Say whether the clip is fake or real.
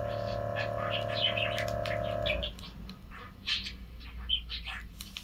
real